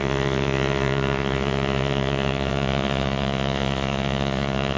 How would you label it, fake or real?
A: fake